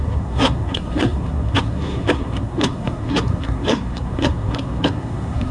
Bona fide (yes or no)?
no